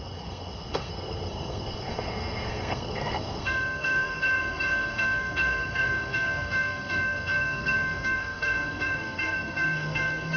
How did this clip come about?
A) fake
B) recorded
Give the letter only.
A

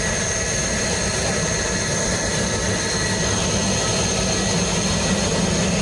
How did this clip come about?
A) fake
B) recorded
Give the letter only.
B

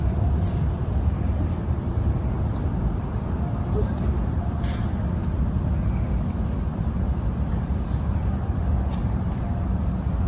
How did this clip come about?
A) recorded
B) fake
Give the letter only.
B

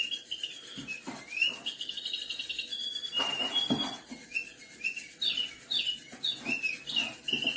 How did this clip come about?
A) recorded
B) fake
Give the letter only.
A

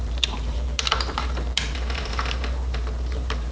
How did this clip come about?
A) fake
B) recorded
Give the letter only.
A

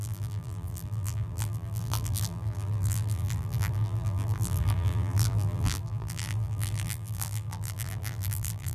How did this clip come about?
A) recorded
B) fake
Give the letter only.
B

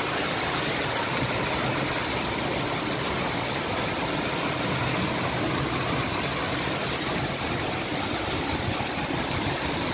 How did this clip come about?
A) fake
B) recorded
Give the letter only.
B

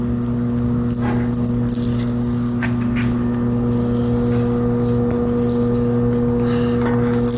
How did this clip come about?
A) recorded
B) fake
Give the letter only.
A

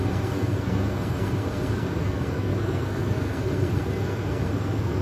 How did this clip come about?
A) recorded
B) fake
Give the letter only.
B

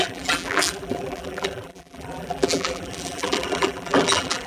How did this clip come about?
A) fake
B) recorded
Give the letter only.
A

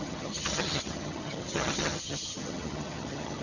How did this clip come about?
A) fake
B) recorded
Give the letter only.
A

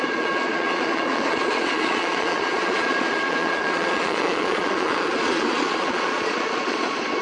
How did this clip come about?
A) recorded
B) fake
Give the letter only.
B